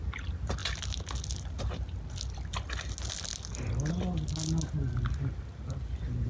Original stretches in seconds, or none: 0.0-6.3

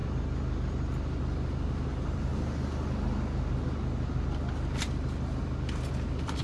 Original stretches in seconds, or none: 0.0-1.9; 2.3-5.4

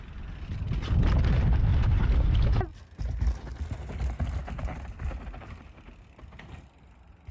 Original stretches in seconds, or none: 0.0-1.7; 2.3-7.3

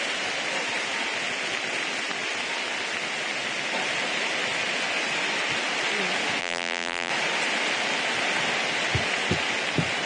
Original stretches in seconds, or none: 0.0-6.4; 7.1-10.1

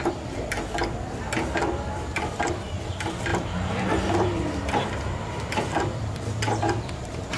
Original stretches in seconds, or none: none

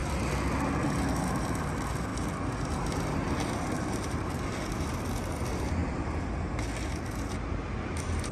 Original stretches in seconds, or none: 0.0-8.3